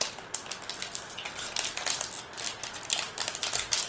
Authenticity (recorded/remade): recorded